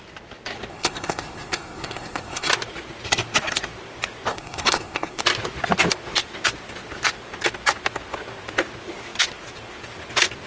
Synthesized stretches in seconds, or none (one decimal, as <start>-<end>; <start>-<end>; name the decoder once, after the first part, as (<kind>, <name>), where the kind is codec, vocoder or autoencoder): 0.7-2.5 (codec, SNAC); 4.3-5.2